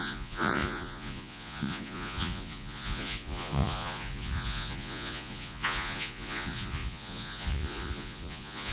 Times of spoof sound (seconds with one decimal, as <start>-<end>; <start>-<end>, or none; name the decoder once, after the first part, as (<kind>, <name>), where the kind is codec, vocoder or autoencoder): 0.0-8.7 (vocoder, Vocos)